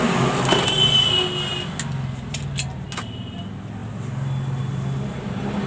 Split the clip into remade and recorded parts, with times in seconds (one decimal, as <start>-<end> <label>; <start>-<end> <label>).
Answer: 0.0-5.7 recorded